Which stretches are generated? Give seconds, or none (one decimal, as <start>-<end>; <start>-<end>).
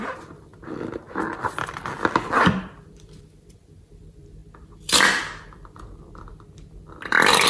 0.0-0.5; 2.3-4.4; 6.9-7.5